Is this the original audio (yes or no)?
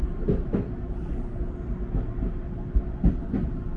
yes